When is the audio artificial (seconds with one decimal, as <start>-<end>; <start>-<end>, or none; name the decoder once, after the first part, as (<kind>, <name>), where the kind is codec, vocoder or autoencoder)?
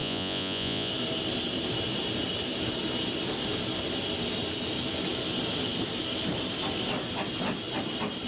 0.0-0.9 (vocoder, Vocos)